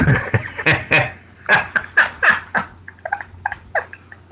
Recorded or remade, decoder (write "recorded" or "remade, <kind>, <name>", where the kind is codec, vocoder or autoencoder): recorded